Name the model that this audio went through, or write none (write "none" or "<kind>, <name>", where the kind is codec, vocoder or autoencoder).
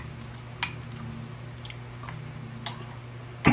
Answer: none